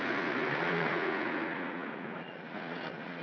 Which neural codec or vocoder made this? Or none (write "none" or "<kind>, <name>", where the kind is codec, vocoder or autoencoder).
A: vocoder, Vocos